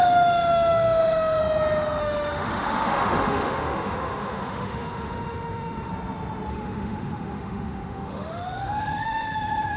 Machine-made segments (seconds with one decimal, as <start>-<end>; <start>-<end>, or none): 0.0-1.4; 2.0-5.9; 6.5-9.8